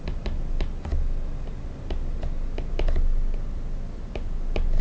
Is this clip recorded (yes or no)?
yes